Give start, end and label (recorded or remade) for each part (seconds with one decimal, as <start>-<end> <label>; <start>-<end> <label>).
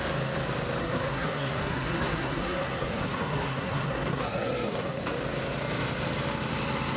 0.0-0.8 recorded; 0.8-5.0 remade; 5.0-7.0 recorded